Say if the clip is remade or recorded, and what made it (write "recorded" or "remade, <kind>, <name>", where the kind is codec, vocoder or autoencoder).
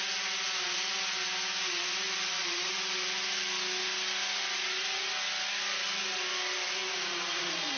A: recorded